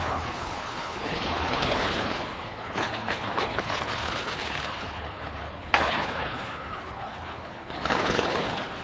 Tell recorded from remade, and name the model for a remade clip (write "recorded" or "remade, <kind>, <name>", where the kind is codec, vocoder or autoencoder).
remade, codec, HILCodec